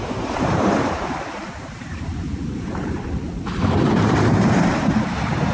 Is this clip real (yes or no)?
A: no